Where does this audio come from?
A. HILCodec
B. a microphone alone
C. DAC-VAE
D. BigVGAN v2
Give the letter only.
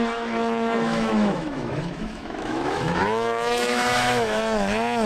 C